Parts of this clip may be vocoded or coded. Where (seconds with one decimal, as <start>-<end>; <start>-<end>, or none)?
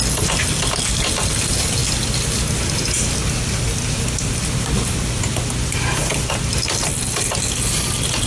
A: none